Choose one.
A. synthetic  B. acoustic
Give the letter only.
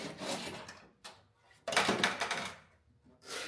B